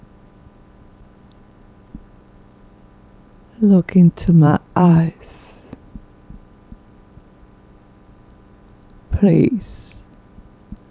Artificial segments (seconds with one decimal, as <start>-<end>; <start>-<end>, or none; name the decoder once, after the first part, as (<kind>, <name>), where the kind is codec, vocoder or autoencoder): 0.0-10.9 (vocoder, BigVGAN v2)